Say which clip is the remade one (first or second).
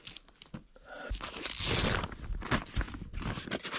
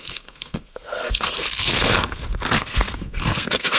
second